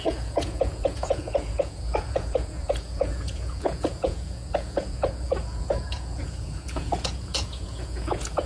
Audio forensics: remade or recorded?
remade